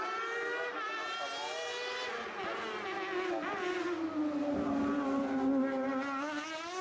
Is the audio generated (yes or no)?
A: no